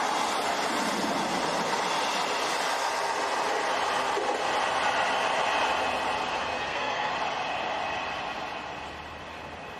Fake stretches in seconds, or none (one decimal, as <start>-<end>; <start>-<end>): 6.5-7.1